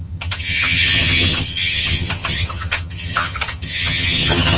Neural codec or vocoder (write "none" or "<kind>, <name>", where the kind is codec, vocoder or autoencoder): vocoder, HiFi-GAN